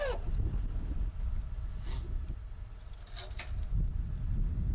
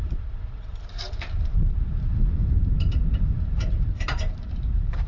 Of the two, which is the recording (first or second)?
first